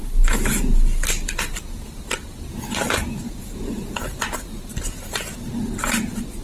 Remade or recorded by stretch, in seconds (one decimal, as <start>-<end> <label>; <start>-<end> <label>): 0.0-0.6 remade; 0.6-6.4 recorded